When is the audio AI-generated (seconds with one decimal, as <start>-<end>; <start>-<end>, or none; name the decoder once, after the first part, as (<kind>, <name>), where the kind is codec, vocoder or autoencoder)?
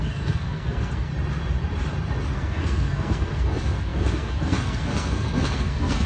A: 0.0-1.1 (codec, SNAC); 2.3-6.1